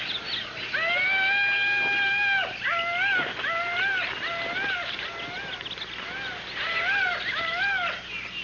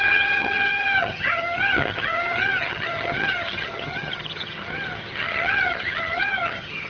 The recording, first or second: first